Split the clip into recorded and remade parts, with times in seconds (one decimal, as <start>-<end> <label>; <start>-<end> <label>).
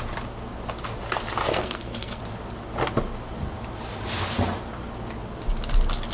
0.0-1.5 recorded; 1.5-2.2 remade; 2.2-6.1 recorded